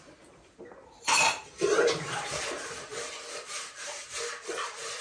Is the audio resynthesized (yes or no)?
yes